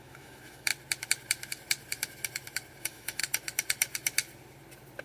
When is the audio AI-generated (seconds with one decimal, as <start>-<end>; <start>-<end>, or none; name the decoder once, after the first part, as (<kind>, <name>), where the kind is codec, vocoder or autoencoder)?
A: 0.0-0.7 (autoencoder, DAC-VAE); 2.8-3.2